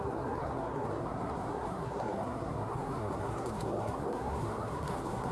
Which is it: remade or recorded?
remade